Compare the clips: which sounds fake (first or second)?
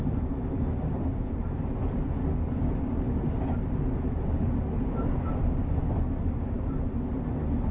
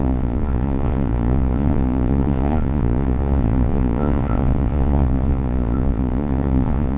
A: second